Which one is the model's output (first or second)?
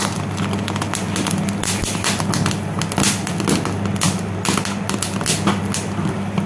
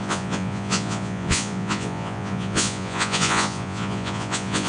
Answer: second